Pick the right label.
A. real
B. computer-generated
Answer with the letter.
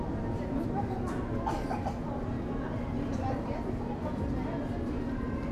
A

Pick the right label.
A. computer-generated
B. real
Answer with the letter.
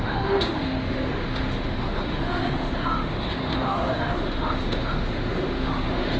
A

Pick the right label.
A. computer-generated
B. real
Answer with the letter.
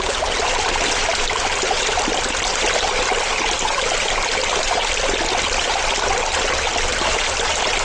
B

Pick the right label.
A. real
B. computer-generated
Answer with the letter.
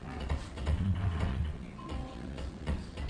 B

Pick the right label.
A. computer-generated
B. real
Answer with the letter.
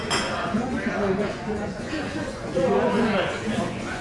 A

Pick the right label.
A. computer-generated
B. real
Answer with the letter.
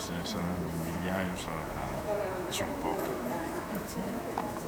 A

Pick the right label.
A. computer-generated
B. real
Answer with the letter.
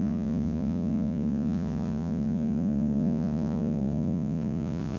A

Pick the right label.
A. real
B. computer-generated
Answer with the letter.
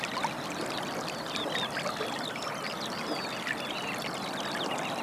A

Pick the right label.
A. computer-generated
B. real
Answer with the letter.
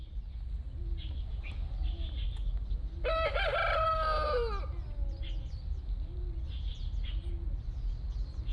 B